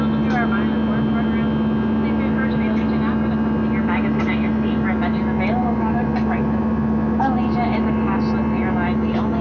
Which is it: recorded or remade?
recorded